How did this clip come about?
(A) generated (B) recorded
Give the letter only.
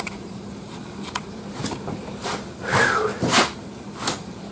A